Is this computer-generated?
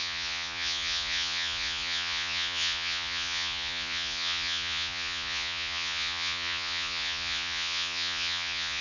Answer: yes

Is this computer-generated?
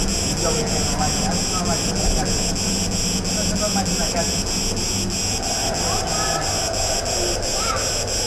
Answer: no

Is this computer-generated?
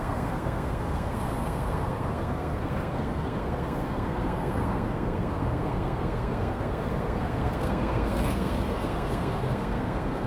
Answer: yes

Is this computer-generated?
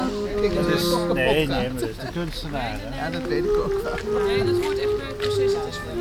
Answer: no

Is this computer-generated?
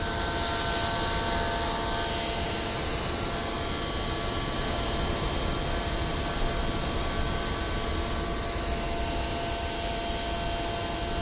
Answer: no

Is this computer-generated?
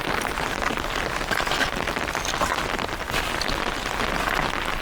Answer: no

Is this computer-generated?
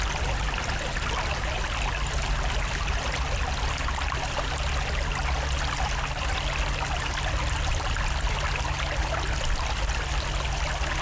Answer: no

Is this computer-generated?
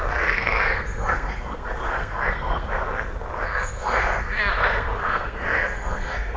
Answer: yes